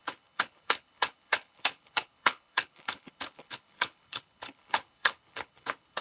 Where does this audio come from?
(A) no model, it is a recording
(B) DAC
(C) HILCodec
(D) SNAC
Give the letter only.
C